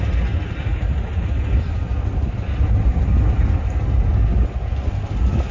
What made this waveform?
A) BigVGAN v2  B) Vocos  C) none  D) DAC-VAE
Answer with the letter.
C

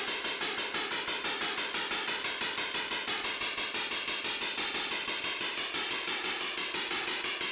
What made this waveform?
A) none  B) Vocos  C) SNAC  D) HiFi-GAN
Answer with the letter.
A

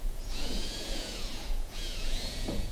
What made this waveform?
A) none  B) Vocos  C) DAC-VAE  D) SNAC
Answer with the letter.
B